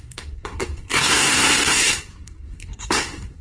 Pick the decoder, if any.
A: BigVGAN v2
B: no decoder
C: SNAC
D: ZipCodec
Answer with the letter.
C